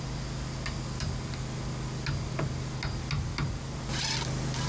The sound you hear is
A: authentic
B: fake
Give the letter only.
A